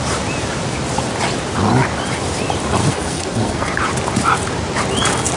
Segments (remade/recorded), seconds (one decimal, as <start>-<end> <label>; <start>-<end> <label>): 0.0-2.8 recorded; 2.8-3.7 remade; 3.7-5.4 recorded